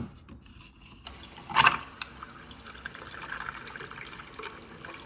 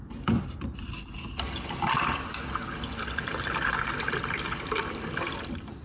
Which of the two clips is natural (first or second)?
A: first